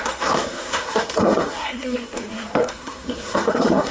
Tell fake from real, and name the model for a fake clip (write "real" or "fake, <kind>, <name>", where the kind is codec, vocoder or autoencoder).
fake, codec, SNAC